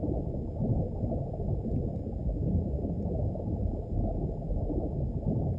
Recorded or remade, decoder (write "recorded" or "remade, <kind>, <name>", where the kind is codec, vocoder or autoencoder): recorded